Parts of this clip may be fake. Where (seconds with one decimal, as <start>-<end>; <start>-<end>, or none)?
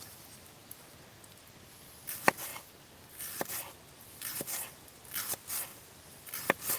2.5-5.0; 5.7-6.8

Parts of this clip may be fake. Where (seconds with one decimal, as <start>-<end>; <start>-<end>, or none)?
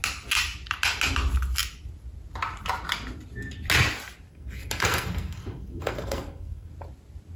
4.3-6.7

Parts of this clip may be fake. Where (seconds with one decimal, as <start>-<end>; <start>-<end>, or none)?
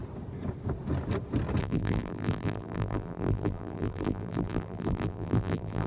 1.6-5.9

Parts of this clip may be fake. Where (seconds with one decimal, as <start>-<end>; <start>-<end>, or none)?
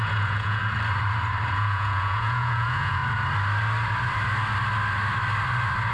0.0-0.6; 1.5-3.0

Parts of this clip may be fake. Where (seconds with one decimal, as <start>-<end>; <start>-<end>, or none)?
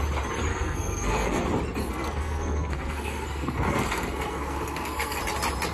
0.5-1.4; 1.8-5.2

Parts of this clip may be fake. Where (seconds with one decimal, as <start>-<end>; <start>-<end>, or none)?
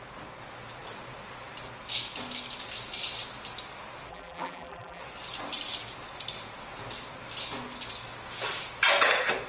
4.1-5.0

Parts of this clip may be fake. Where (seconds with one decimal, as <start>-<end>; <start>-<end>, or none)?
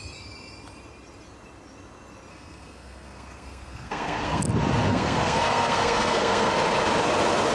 2.3-4.4; 4.9-6.5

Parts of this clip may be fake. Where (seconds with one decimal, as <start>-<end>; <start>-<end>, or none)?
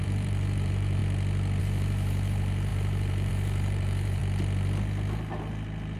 0.0-1.0; 1.6-4.2